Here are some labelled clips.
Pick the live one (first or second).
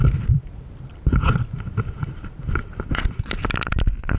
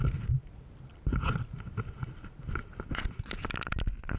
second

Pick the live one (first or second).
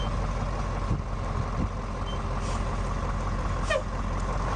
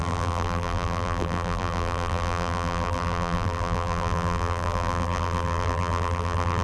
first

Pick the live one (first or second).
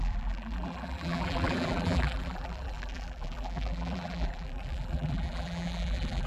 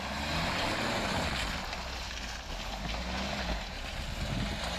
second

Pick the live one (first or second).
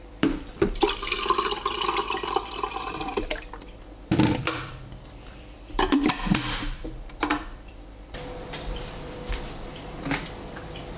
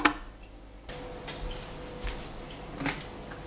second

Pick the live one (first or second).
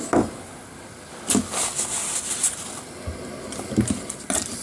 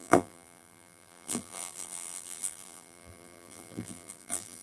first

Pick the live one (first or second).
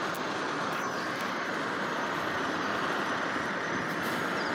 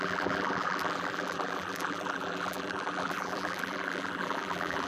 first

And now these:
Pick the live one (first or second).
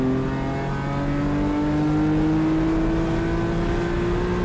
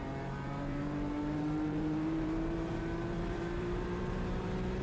first